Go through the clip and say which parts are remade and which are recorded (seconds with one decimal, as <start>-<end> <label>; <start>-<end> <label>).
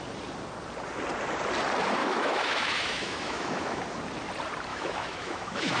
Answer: 0.0-2.0 recorded; 2.0-3.8 remade; 3.8-4.7 recorded; 4.7-5.8 remade